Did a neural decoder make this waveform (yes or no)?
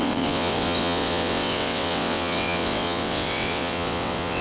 yes